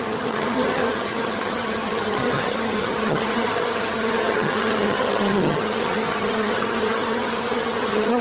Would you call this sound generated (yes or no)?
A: yes